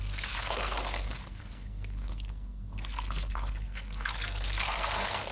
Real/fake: fake